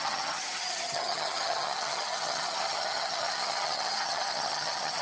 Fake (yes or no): yes